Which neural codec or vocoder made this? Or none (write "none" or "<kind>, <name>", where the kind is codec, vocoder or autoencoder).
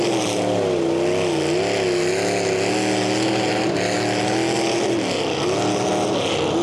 none